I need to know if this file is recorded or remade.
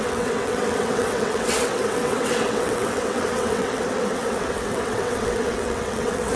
remade